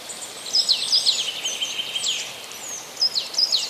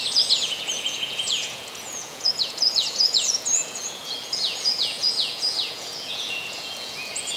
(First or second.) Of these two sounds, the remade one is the second